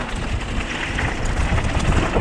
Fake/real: real